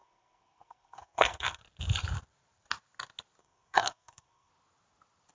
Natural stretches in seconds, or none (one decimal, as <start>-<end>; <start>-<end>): 1.6-3.4; 4.5-5.3